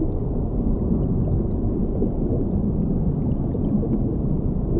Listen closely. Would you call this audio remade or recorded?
recorded